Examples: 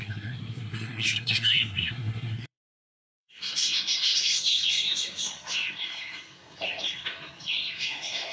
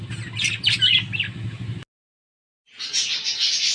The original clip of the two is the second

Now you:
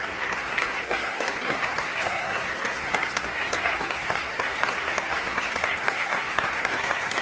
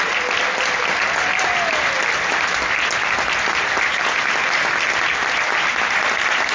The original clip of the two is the second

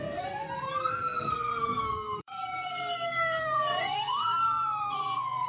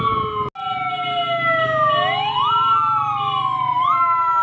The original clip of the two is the second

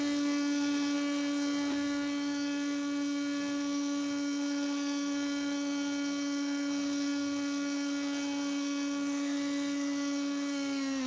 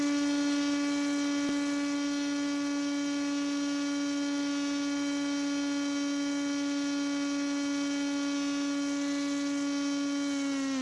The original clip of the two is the second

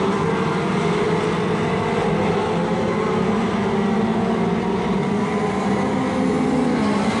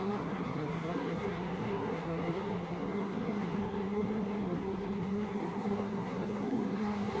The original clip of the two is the first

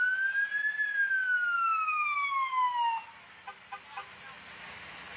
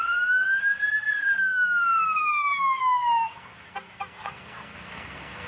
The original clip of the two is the first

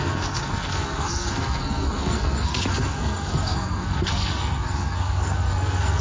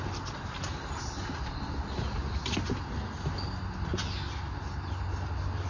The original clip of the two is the second